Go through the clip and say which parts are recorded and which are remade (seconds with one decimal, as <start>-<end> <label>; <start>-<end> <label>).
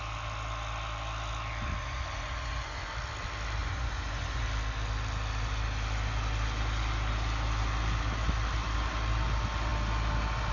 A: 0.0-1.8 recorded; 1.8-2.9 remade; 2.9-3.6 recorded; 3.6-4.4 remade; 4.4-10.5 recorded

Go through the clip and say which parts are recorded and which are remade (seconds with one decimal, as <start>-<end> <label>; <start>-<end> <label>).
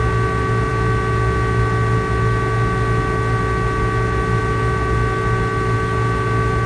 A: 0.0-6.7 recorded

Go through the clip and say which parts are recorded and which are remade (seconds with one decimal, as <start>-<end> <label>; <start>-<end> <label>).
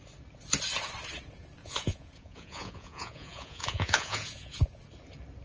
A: 0.0-1.6 recorded; 1.6-4.8 remade; 4.8-5.4 recorded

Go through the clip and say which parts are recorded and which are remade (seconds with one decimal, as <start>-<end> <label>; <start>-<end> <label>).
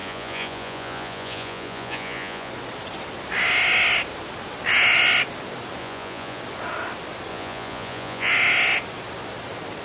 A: 0.0-2.5 remade; 2.5-5.8 recorded; 5.8-6.4 remade; 6.4-7.3 recorded; 7.3-8.3 remade; 8.3-9.8 recorded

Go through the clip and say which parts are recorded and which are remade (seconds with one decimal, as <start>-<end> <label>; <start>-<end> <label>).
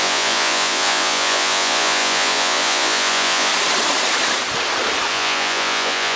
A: 0.0-3.5 remade; 3.5-5.1 recorded; 5.1-6.2 remade